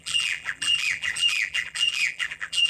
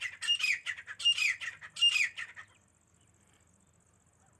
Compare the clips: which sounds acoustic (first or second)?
second